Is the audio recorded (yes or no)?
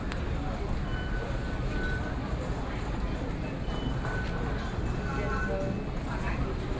yes